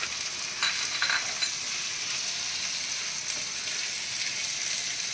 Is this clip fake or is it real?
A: real